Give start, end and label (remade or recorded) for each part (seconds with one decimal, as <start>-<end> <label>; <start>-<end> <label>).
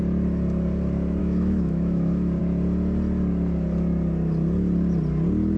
0.0-1.2 recorded; 1.2-2.4 remade; 2.4-5.6 recorded